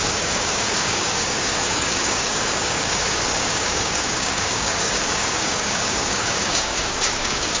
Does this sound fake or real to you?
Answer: fake